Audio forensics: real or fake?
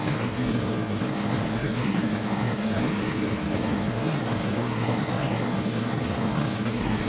fake